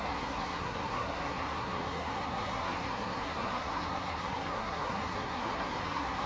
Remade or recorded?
remade